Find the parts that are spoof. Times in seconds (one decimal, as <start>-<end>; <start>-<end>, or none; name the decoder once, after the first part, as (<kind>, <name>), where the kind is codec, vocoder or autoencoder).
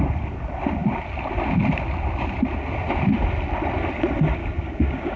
4.4-5.2 (codec, DAC)